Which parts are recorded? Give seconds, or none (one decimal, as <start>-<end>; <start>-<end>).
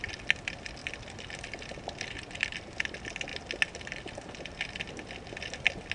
0.0-0.8; 1.3-3.3; 4.9-5.9